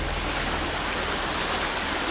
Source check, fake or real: real